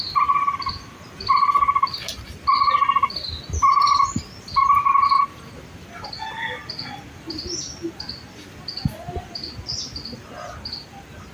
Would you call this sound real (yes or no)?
yes